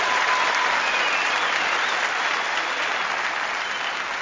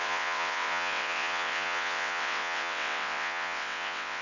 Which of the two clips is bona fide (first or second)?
first